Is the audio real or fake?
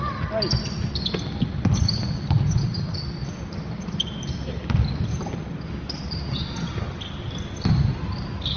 real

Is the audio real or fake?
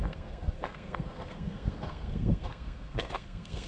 fake